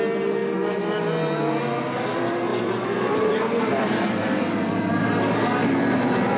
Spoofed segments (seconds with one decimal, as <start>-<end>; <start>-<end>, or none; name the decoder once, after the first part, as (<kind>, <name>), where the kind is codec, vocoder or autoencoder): 2.5-5.1 (vocoder, BigVGAN v2)